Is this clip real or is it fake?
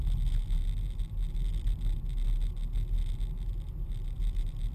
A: real